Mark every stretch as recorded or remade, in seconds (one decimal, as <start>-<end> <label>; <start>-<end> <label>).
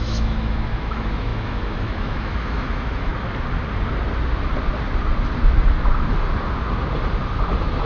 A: 0.0-3.1 remade; 3.1-7.9 recorded